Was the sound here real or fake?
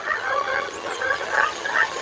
fake